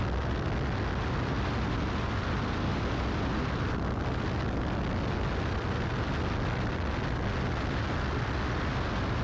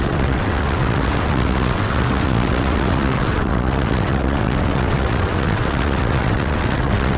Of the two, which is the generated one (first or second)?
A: second